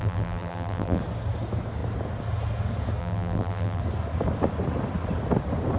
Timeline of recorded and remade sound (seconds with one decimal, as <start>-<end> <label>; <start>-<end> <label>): 0.0-1.0 remade; 1.0-3.0 recorded; 3.0-3.8 remade; 3.8-5.8 recorded